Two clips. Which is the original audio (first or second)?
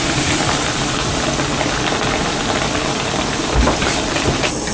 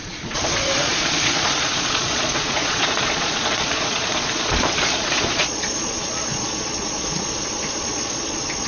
first